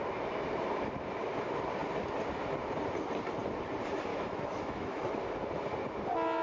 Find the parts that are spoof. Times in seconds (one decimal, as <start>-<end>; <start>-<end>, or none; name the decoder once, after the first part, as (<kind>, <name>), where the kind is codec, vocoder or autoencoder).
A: 4.1-5.1 (autoencoder, DAC-VAE)